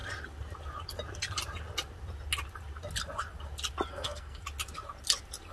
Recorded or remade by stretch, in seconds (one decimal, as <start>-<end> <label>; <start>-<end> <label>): 0.0-3.9 recorded; 3.9-4.4 remade; 4.4-5.5 recorded

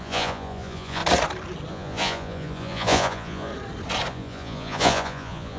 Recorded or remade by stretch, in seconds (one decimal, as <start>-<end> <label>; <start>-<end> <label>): 0.0-1.0 remade; 1.0-1.7 recorded; 1.7-3.5 remade; 3.5-4.1 recorded; 4.1-5.6 remade

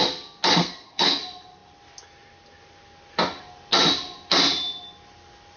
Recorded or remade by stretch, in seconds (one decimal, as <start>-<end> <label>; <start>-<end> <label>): 0.0-0.6 recorded; 0.6-1.2 remade; 1.2-5.6 recorded

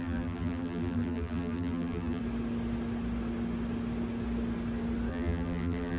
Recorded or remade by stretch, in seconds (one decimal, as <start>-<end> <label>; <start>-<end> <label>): 0.0-2.2 remade; 2.2-5.1 recorded; 5.1-6.0 remade

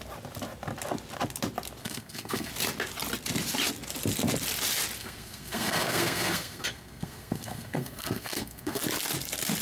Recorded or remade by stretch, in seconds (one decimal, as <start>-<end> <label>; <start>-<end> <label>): 0.0-1.8 recorded; 1.8-2.5 remade; 2.5-5.0 recorded; 5.0-8.8 remade; 8.8-9.6 recorded

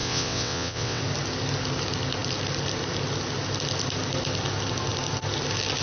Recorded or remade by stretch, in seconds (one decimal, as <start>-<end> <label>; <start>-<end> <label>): 0.0-1.0 remade; 1.0-5.8 recorded

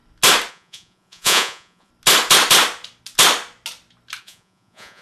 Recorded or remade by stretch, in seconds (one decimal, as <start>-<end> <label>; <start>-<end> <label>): 0.0-0.5 recorded; 0.5-1.9 remade; 1.9-4.2 recorded; 4.2-5.0 remade